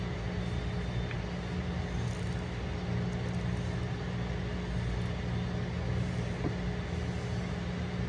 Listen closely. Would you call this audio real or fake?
real